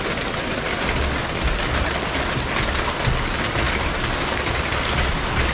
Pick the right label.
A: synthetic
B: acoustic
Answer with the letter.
B